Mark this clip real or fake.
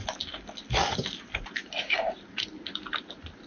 real